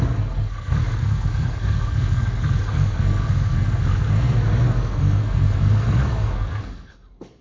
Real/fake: fake